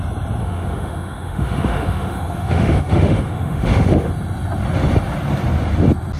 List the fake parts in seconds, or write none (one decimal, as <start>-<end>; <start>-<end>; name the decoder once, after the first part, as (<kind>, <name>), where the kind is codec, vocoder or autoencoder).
0.4-4.1 (autoencoder, DAC-VAE)